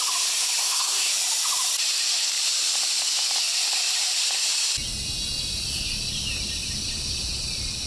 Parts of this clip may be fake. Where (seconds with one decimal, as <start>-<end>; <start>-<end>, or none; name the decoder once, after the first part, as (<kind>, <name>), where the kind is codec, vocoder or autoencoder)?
0.6-1.1 (codec, SNAC)